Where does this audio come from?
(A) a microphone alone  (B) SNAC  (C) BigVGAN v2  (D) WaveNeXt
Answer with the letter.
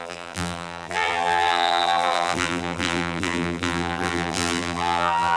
C